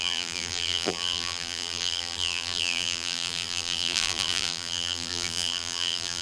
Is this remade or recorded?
remade